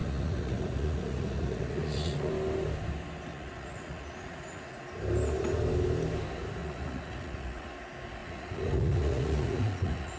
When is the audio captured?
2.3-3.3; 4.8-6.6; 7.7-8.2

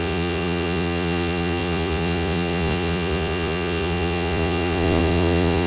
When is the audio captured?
none

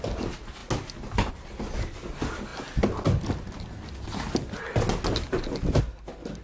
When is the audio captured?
0.0-6.4

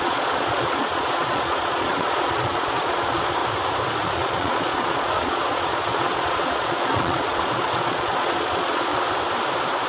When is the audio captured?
3.4-4.0; 8.9-9.9